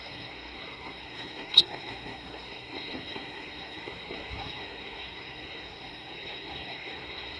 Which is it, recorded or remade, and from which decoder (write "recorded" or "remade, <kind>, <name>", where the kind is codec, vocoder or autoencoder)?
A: remade, codec, SNAC